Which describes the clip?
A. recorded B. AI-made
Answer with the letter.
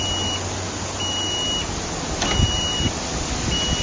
A